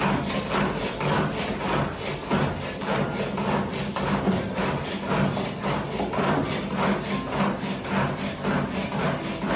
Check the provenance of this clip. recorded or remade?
recorded